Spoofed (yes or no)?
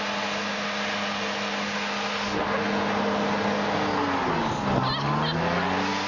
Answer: no